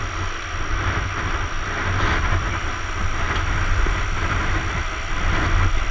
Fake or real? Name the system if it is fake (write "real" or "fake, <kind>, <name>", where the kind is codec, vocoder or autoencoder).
real